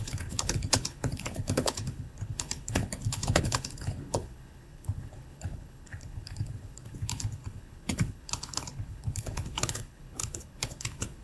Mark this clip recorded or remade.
remade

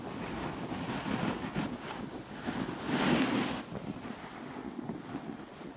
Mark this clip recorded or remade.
recorded